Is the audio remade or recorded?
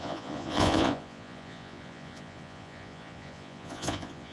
remade